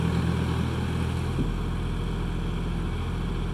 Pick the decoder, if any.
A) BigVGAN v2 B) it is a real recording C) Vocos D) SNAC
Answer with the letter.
B